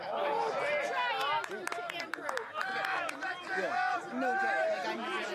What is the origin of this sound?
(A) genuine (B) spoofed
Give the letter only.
B